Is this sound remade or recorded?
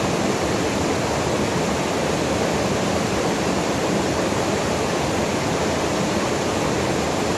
recorded